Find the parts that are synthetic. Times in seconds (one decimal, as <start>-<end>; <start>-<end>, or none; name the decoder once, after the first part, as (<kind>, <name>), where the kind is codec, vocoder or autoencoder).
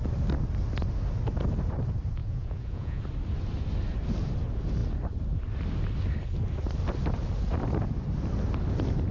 2.2-3.0 (vocoder, Vocos)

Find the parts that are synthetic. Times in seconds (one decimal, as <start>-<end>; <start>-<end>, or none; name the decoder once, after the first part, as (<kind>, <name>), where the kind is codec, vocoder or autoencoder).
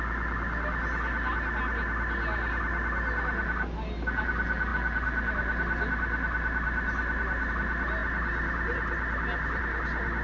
none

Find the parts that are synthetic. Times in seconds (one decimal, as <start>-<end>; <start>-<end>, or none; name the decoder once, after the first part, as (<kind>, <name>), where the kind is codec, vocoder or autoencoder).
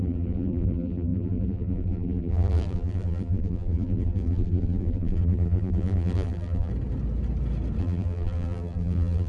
0.0-6.7 (vocoder, BigVGAN v2); 7.8-9.3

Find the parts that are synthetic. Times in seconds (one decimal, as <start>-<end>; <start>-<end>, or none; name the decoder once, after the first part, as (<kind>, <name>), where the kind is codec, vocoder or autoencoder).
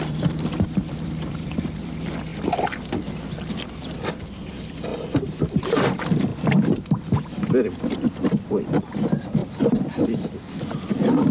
0.0-2.3 (vocoder, BigVGAN v2); 2.9-4.9; 5.6-11.3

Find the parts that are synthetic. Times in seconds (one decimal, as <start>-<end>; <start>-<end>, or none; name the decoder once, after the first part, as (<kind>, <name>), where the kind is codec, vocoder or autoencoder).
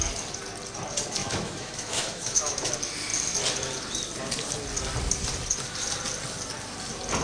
1.2-2.7 (autoencoder, DAC-VAE)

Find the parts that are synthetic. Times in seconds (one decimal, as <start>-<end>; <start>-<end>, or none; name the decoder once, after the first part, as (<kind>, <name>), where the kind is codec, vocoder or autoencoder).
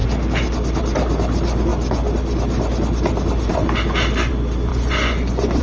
4.7-5.6 (vocoder, Vocos)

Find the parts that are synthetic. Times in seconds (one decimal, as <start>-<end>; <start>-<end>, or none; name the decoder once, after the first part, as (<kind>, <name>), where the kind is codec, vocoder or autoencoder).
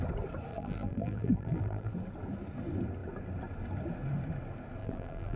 0.5-1.9 (vocoder, BigVGAN v2); 4.8-5.4